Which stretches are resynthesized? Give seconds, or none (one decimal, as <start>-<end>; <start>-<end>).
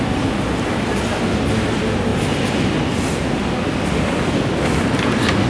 none